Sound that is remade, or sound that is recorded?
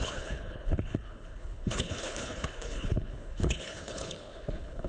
remade